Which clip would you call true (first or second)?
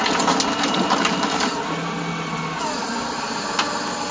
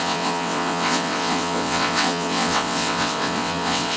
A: first